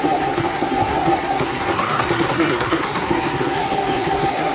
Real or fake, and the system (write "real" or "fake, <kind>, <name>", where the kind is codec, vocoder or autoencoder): fake, codec, SNAC